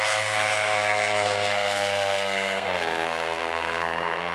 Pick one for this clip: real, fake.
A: fake